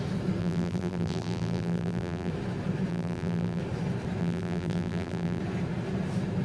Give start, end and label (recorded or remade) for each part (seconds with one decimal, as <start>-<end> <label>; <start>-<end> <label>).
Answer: 0.0-0.4 recorded; 0.4-2.3 remade; 2.3-2.9 recorded; 2.9-3.6 remade; 3.6-4.2 recorded; 4.2-5.4 remade; 5.4-6.4 recorded